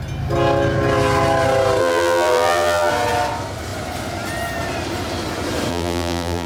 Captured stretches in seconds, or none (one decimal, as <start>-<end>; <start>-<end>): 0.0-1.8; 2.9-5.7